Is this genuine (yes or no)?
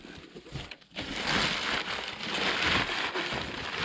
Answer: yes